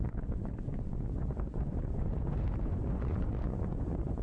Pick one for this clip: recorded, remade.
remade